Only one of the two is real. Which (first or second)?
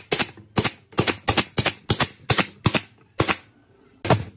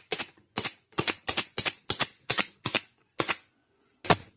first